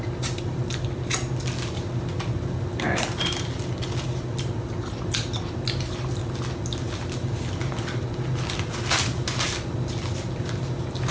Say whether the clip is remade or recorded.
recorded